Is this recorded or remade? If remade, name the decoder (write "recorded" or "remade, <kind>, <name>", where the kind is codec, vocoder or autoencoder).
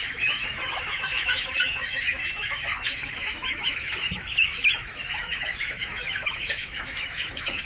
remade, autoencoder, DAC-VAE